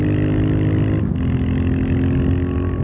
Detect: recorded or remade recorded